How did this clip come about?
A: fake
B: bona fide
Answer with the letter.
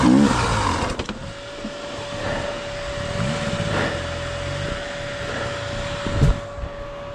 B